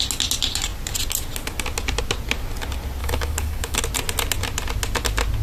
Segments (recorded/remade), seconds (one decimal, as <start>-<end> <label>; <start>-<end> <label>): 0.0-3.0 recorded; 3.0-3.8 remade; 3.8-5.4 recorded